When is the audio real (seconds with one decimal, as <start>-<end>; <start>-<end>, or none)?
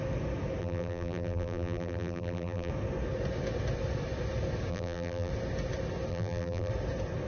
0.0-0.6; 2.7-4.7; 5.3-6.1; 6.7-7.3